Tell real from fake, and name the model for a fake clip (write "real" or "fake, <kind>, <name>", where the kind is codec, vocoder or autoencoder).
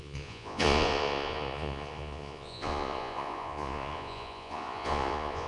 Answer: fake, vocoder, Vocos